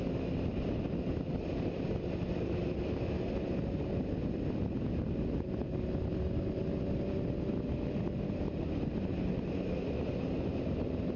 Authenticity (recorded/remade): recorded